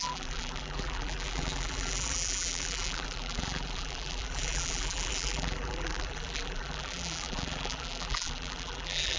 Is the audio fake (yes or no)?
yes